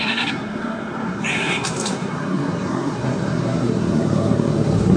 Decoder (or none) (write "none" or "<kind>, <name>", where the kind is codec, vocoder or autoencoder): codec, SNAC